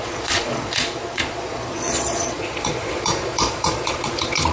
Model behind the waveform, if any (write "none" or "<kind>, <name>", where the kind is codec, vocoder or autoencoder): vocoder, Vocos